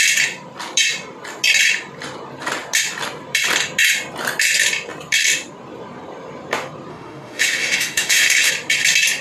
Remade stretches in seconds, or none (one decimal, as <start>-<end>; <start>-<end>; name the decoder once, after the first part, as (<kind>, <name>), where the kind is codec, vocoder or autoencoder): 6.9-8.5 (autoencoder, DAC-VAE)